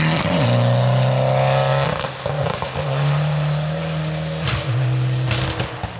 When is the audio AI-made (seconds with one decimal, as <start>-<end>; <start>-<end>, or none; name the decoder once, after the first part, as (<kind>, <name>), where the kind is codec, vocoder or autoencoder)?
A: none